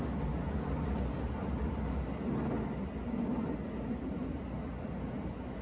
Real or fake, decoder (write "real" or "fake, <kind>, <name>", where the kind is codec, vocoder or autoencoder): real